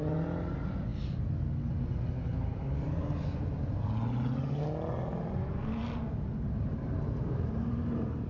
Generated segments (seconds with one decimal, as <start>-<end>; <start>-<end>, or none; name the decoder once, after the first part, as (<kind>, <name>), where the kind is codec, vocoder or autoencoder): 5.2-8.3 (vocoder, BigVGAN v2)